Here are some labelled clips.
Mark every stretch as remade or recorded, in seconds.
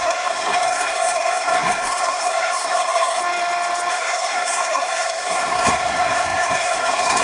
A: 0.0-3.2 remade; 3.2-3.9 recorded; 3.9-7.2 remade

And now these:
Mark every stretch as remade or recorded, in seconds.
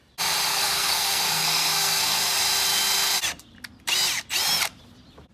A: 0.0-0.5 recorded; 0.5-2.4 remade; 2.4-5.3 recorded